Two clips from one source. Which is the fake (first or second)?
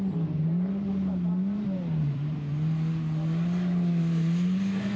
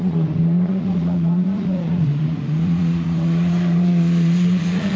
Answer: second